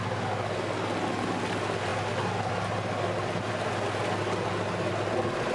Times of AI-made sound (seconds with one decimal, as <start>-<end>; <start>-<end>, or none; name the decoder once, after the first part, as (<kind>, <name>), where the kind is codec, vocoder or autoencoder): none